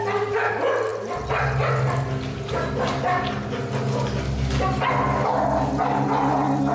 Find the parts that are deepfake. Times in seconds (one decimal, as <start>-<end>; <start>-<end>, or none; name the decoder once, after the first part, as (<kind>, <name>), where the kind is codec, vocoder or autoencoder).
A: none